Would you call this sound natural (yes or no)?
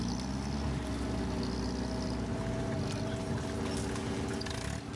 yes